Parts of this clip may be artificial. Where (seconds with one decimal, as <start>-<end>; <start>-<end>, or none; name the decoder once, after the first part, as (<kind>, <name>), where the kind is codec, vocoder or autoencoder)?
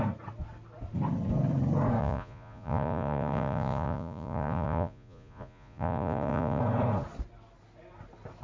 2.0-6.6 (vocoder, Vocos)